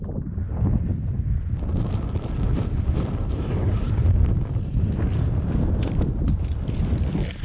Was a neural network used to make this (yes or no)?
no